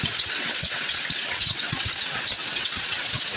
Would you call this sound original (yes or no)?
no